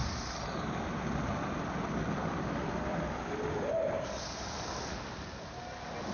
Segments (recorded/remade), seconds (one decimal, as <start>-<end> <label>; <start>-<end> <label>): 0.0-6.1 recorded